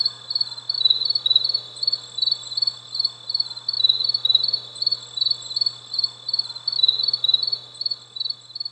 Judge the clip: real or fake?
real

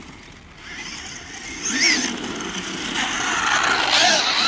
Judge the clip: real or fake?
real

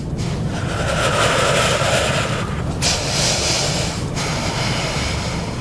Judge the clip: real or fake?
real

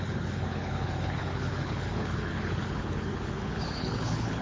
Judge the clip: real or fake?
fake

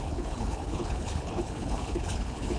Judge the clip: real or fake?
fake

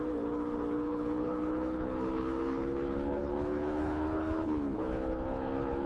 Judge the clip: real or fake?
fake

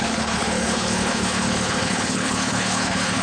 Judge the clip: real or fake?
fake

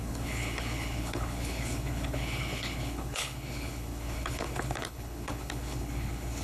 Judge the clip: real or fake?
fake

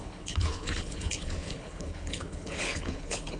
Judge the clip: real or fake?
fake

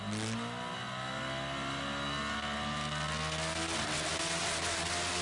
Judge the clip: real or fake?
real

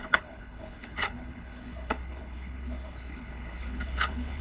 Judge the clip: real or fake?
fake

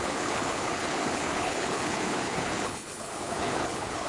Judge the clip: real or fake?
fake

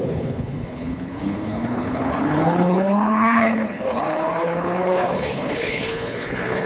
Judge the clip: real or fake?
fake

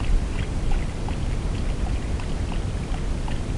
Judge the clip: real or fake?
real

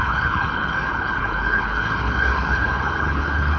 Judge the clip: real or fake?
fake